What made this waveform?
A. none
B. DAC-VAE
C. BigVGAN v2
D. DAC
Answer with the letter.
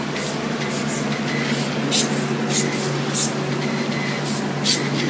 A